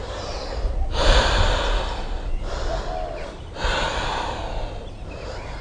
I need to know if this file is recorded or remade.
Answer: recorded